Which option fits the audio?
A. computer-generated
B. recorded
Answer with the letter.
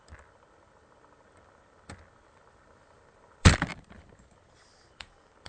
A